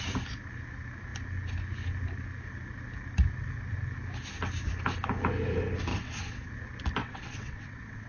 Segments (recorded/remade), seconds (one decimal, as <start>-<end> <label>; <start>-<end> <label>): 0.0-5.9 recorded; 5.9-6.5 remade; 6.5-7.0 recorded; 7.0-8.1 remade